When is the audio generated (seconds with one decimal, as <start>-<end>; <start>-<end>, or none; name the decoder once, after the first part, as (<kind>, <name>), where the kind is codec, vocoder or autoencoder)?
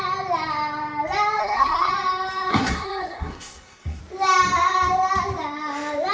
1.4-1.9 (codec, SNAC); 2.5-4.0